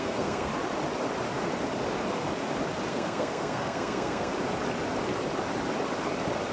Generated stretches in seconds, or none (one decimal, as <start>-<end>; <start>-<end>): 0.0-0.5; 2.9-4.3